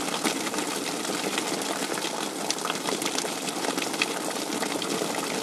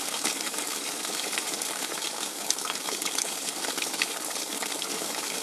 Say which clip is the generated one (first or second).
second